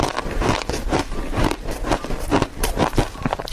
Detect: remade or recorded recorded